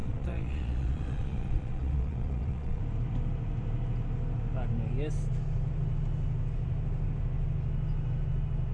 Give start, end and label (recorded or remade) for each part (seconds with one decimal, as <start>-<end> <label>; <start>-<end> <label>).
0.0-2.8 remade; 2.8-8.7 recorded